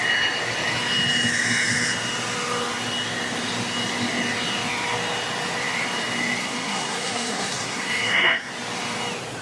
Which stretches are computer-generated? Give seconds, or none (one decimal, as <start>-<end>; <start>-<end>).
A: 6.4-8.5